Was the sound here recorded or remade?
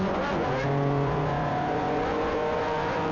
remade